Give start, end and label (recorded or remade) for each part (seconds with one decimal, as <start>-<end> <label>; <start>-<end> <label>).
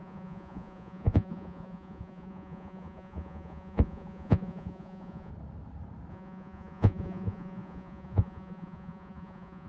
0.0-5.3 remade; 5.3-6.1 recorded; 6.1-9.7 remade